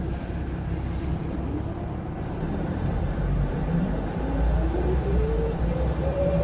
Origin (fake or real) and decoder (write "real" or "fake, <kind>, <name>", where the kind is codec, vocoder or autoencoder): fake, vocoder, BigVGAN v2